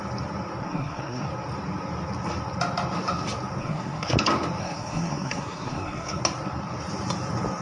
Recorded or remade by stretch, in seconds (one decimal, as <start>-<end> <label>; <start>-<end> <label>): 0.0-0.6 recorded; 0.6-1.3 remade; 1.3-3.6 recorded; 3.6-4.1 remade; 4.1-4.6 recorded; 4.6-6.2 remade; 6.2-7.6 recorded